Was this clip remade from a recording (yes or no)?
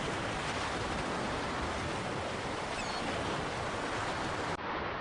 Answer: no